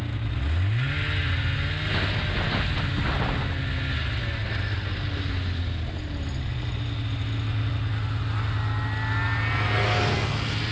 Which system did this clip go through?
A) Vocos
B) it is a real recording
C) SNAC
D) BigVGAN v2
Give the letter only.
B